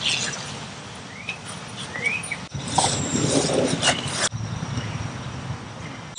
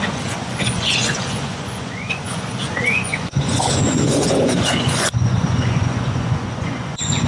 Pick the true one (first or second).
first